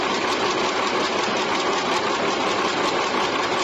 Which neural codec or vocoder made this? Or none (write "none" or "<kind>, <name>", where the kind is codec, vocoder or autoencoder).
none